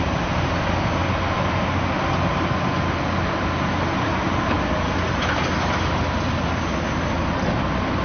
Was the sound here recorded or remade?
recorded